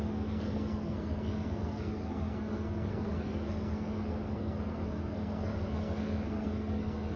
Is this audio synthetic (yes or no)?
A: yes